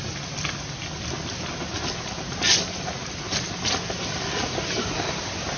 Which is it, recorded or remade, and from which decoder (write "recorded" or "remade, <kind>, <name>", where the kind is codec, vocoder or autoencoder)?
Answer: recorded